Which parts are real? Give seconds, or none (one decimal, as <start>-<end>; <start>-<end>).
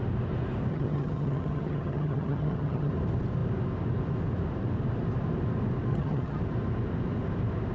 0.0-0.7; 2.9-5.9; 6.4-7.7